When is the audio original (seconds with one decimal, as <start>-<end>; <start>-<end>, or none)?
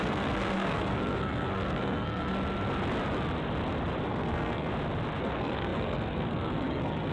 2.3-4.1; 4.7-5.2